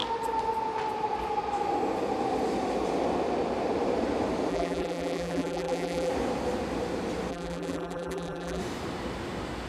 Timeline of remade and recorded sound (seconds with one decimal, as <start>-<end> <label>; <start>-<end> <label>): 0.0-4.5 recorded; 4.5-6.1 remade; 6.1-7.3 recorded; 7.3-8.6 remade; 8.6-9.7 recorded